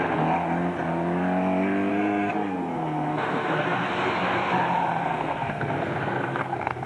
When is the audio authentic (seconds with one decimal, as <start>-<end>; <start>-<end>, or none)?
0.0-1.9; 3.9-5.0